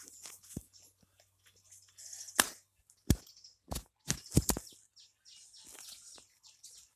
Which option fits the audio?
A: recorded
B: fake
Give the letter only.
A